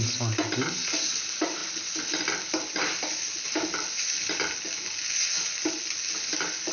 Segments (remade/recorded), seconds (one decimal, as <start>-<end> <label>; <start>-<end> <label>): 0.0-6.7 recorded